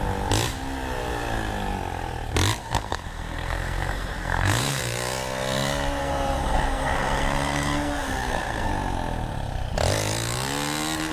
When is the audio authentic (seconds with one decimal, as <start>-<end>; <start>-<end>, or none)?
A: 0.0-2.6; 4.8-6.0; 8.7-11.1